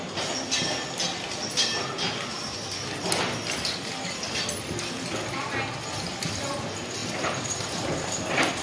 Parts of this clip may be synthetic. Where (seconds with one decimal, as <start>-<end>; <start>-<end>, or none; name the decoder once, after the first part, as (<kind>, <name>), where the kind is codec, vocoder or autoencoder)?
7.0-8.2 (vocoder, BigVGAN v2)